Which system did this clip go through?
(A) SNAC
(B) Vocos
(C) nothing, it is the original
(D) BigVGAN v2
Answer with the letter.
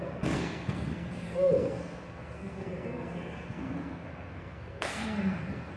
A